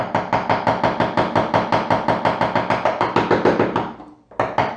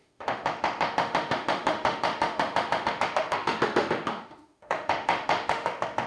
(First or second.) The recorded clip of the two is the first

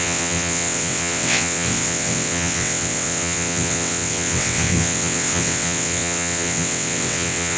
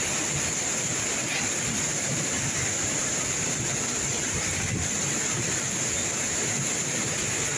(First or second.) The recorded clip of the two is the second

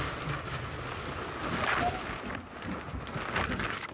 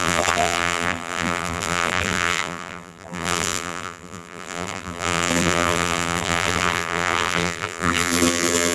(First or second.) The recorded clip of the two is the first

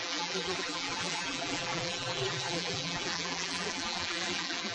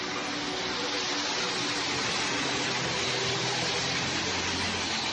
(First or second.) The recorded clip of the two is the second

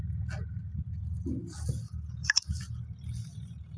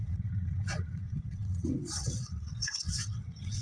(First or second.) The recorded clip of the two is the first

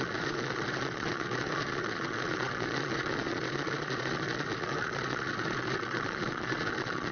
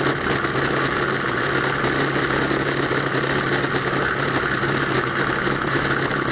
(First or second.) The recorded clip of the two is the second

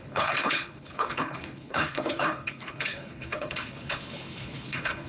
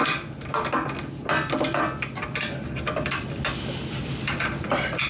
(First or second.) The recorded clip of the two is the second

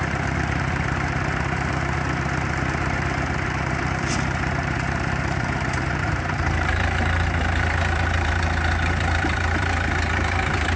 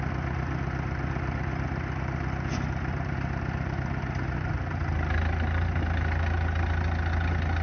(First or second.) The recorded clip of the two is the second